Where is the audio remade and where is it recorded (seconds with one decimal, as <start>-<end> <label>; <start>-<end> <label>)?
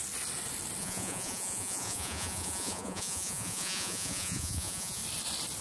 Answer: 0.0-0.8 recorded; 0.8-5.0 remade; 5.0-5.6 recorded